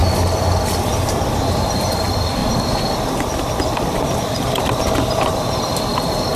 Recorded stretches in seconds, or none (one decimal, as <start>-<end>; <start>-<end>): 0.0-0.7; 2.4-4.8